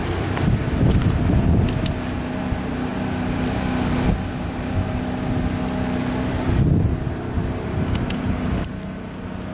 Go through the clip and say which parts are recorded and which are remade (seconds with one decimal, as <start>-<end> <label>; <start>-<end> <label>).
0.0-0.6 remade; 0.6-9.5 recorded